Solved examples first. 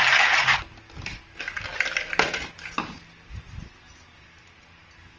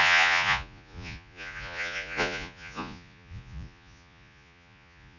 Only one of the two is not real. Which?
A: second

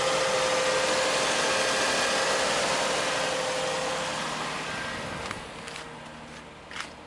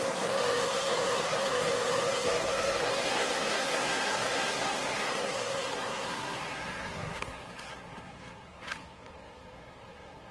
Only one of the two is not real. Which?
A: second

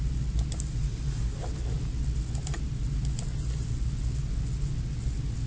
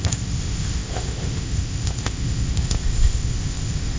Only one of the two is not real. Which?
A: second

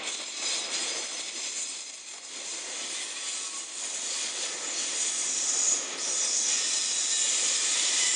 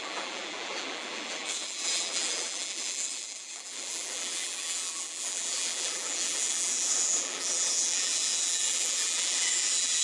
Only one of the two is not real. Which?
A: second